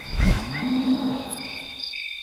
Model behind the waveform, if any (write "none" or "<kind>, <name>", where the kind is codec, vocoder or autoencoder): autoencoder, DAC-VAE